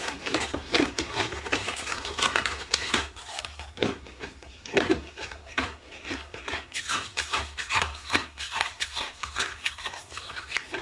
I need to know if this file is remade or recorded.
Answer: remade